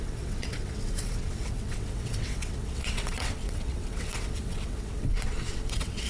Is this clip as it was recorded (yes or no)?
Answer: no